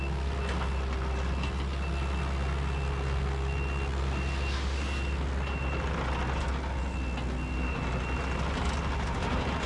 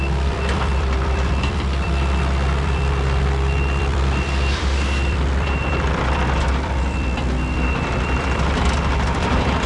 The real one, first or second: first